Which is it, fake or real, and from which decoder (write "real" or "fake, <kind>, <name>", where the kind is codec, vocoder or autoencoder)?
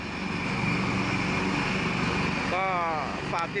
real